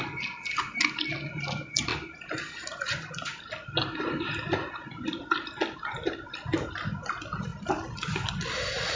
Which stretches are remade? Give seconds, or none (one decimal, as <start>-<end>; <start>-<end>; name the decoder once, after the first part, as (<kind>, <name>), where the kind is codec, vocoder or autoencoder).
none